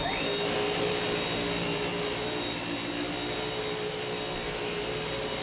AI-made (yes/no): no